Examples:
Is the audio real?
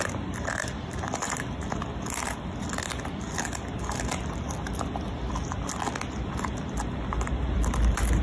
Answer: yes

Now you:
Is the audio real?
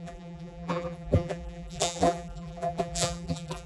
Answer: no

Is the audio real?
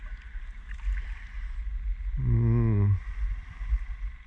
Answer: yes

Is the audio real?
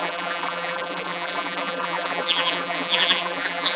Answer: no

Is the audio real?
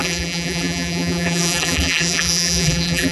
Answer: no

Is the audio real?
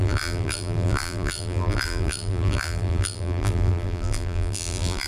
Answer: no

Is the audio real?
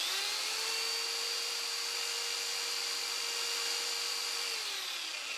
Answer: yes